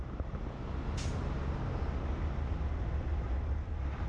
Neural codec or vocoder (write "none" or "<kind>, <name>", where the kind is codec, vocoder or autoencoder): none